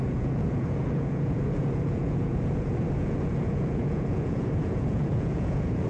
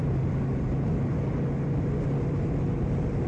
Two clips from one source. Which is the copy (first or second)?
first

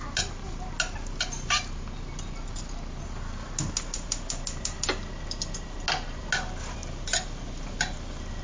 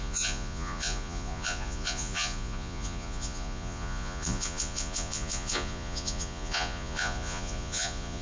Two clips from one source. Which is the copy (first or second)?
second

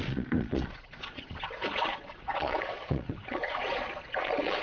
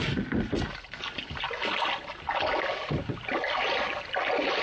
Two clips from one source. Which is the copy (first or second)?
first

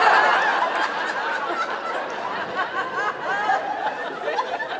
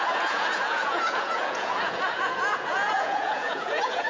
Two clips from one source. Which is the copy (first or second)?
second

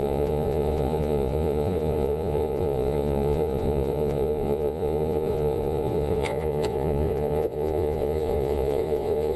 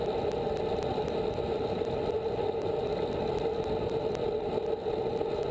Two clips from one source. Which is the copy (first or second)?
first